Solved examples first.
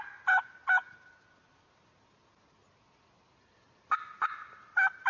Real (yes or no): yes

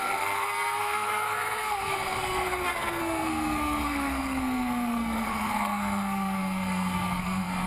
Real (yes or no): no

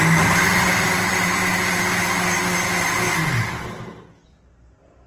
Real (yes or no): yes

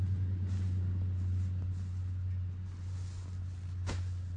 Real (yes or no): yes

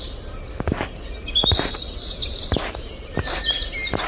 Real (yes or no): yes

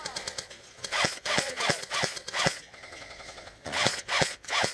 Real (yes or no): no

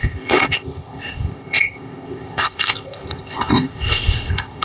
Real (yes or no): no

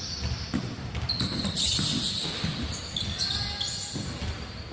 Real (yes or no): yes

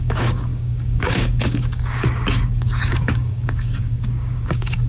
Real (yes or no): no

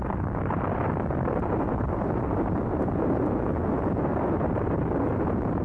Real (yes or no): no